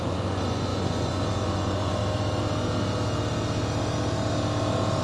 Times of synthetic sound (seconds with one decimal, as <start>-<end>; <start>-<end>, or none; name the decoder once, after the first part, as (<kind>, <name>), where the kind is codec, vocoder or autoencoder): 0.0-2.0 (vocoder, Vocos)